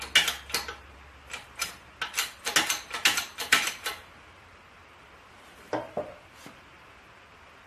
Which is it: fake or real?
real